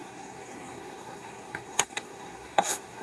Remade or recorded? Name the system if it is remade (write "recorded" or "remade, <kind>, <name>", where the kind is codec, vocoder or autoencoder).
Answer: remade, codec, SNAC